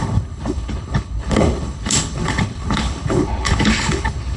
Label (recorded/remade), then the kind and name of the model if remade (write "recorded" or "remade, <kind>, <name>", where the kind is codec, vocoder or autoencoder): remade, codec, HILCodec